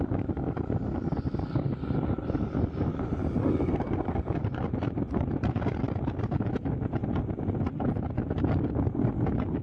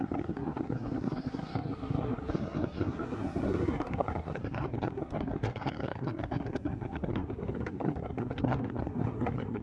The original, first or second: first